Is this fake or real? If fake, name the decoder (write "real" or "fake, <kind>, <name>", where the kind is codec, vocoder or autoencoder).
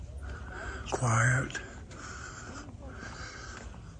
real